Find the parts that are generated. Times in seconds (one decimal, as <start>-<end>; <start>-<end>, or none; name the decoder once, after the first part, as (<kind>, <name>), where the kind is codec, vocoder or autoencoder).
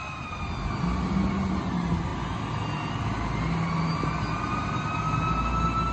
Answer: none